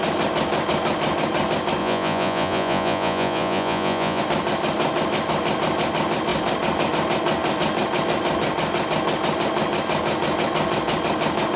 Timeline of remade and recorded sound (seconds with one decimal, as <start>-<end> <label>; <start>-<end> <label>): 0.0-1.8 recorded; 1.8-4.2 remade; 4.2-11.6 recorded